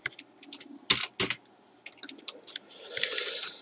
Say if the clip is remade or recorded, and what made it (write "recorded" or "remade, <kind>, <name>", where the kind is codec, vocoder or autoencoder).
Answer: recorded